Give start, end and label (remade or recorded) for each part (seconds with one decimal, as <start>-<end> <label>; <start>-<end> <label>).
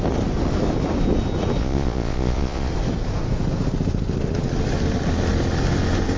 0.0-1.6 recorded; 1.6-2.7 remade; 2.7-6.2 recorded